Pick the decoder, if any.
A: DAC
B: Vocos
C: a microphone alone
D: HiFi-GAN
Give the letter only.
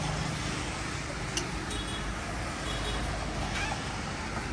C